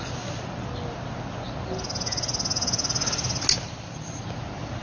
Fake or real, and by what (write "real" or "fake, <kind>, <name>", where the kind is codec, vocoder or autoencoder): real